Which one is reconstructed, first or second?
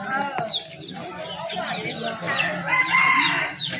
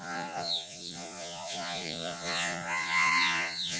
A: second